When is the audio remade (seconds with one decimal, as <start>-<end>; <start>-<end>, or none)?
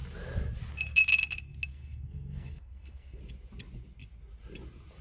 1.7-3.2